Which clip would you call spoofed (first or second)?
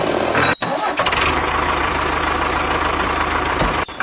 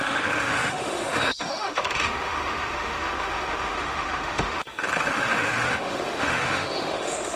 second